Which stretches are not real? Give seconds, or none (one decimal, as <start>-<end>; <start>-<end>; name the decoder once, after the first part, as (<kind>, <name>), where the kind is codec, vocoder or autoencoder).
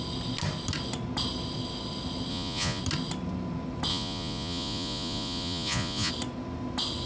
2.3-2.8 (vocoder, Vocos); 3.9-6.1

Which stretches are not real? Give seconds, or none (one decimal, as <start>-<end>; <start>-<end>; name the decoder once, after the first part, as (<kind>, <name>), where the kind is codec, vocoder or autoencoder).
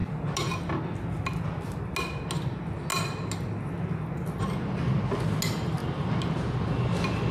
none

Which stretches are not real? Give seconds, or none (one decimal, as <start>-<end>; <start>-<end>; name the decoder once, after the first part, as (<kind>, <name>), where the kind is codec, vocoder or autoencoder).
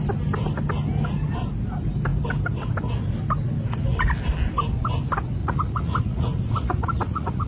5.4-7.5 (vocoder, Vocos)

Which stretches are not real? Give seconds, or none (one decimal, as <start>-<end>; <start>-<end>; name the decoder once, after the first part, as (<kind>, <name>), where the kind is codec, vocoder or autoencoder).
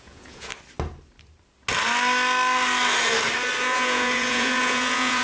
0.0-0.5 (vocoder, Vocos); 3.6-5.2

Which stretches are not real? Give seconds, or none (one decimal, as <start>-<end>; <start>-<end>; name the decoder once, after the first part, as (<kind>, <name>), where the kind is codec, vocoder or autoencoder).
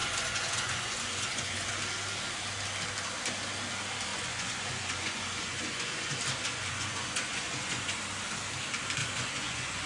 0.0-1.7 (vocoder, Vocos); 4.1-6.1; 6.5-8.0; 9.0-9.9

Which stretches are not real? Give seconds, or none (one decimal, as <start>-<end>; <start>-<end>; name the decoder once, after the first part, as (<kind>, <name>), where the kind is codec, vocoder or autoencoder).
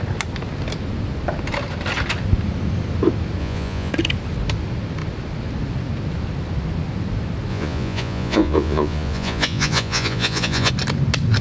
3.4-3.9 (vocoder, Vocos); 7.5-10.7